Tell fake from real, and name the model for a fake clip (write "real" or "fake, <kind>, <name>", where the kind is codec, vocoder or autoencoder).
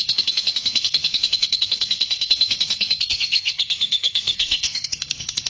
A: fake, codec, SNAC